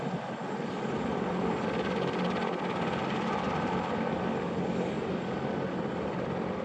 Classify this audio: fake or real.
real